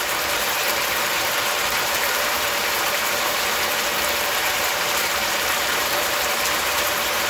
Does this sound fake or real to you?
fake